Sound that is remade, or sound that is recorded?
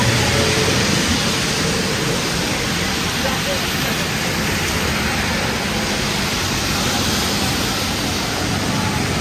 recorded